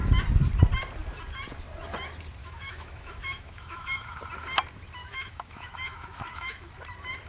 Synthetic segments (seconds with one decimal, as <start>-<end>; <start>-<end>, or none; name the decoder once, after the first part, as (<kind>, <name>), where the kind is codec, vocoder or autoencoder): 2.4-4.2 (autoencoder, DAC-VAE); 5.0-6.7